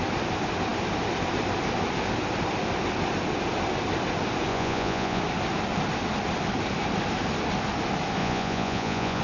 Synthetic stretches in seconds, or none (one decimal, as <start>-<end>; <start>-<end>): 4.5-5.2; 8.2-9.2